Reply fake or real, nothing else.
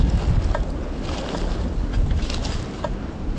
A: real